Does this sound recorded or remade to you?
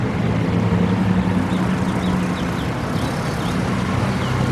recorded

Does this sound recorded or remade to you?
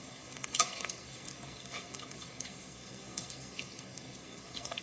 remade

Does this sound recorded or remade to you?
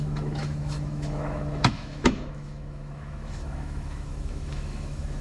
remade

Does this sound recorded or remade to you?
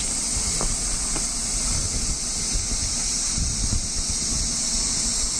remade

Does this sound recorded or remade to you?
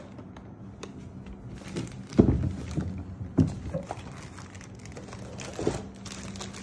recorded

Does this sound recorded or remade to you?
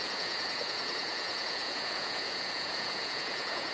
remade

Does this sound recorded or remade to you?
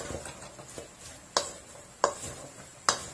recorded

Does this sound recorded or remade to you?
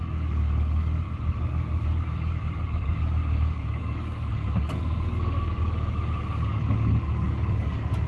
remade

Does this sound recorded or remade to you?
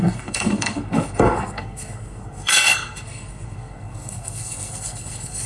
remade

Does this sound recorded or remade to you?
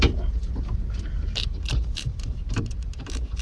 remade